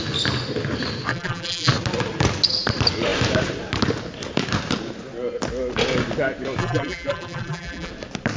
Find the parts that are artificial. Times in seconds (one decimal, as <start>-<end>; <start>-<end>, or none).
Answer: 1.1-1.7; 6.6-7.9

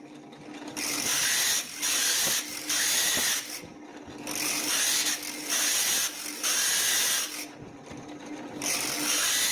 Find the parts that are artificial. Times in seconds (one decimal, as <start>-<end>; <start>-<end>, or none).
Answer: none

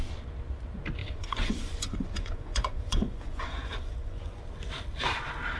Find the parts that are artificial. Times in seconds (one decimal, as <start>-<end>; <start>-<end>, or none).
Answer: 1.0-4.4

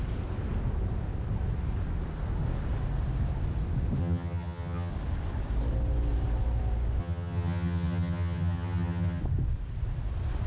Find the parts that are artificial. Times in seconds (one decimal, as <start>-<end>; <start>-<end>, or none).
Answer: 4.0-4.9; 7.0-9.2